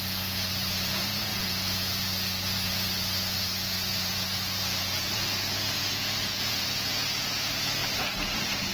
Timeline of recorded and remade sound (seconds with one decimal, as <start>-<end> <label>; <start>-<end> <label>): 0.0-7.8 remade; 7.8-8.7 recorded